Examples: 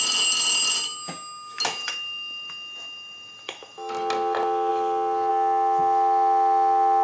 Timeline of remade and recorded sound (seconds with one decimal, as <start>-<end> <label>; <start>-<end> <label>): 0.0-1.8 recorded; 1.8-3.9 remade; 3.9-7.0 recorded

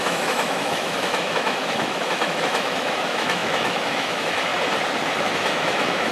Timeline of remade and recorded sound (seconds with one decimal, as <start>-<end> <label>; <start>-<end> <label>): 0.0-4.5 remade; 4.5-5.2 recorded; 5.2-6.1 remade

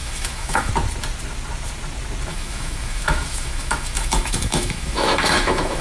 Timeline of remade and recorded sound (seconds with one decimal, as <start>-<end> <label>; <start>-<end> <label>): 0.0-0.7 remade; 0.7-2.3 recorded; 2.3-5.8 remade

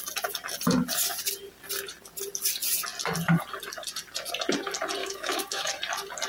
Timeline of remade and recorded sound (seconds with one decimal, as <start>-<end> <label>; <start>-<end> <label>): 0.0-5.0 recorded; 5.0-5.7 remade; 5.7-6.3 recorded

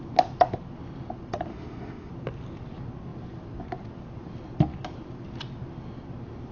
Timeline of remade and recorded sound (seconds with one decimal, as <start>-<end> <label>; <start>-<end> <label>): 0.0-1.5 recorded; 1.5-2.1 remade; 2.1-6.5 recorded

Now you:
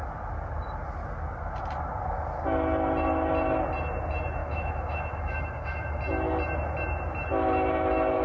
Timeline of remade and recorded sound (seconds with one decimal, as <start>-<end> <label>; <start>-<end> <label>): 0.0-4.4 recorded; 4.4-6.0 remade; 6.0-8.2 recorded

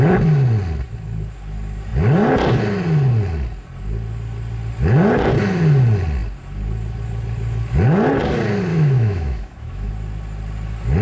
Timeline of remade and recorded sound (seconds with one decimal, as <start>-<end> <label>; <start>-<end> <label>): 0.0-8.7 recorded; 8.7-9.9 remade; 9.9-11.0 recorded